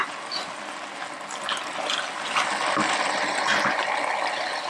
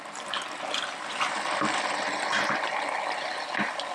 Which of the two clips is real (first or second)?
first